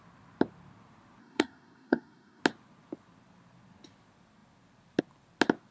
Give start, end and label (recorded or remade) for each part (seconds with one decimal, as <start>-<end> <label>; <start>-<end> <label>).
0.0-1.2 recorded; 1.2-2.4 remade; 2.4-5.7 recorded